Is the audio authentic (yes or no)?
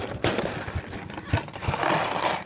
yes